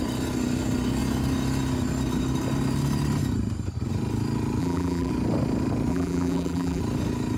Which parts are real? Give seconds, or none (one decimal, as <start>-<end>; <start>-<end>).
0.0-4.6; 5.1-5.9; 6.8-7.4